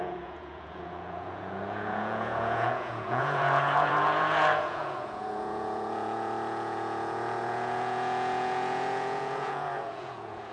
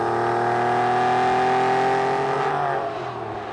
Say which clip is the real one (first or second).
second